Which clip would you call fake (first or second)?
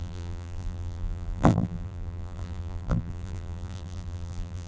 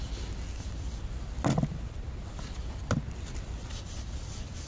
first